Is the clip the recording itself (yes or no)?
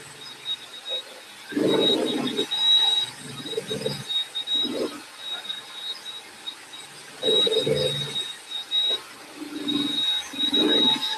yes